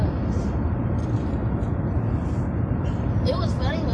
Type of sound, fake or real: real